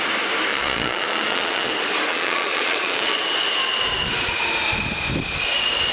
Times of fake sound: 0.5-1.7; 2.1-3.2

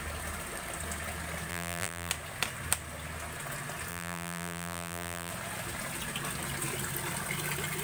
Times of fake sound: 1.5-2.1; 3.9-5.3

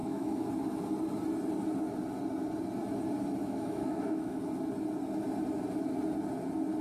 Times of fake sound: 0.0-0.5; 3.4-4.4